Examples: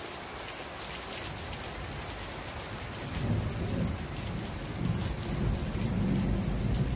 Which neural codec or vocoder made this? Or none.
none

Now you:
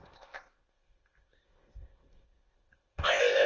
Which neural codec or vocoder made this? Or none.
codec, ZipCodec